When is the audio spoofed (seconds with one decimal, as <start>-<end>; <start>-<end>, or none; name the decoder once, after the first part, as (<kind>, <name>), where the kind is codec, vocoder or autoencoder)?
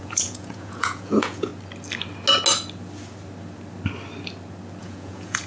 0.0-1.5 (vocoder, Vocos); 4.8-5.5